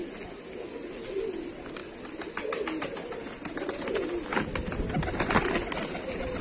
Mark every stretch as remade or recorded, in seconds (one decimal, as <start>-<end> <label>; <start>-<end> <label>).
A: 0.0-6.4 recorded